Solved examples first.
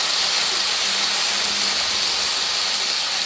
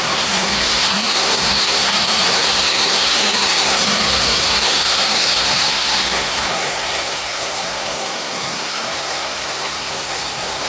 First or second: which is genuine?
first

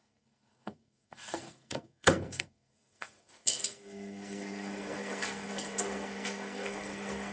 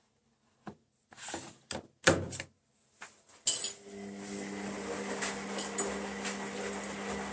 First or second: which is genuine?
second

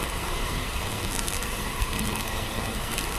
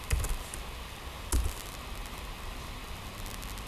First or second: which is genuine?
second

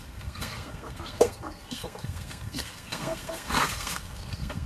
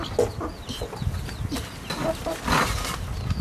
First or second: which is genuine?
second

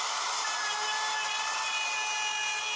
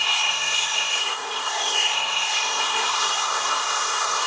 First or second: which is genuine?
first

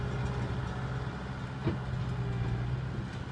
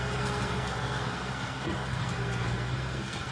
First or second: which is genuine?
first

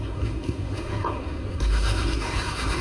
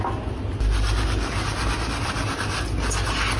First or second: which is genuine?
second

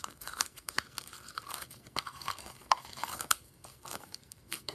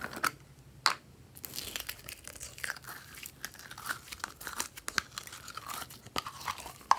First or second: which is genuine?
second